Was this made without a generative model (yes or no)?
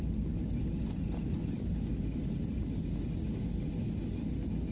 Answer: yes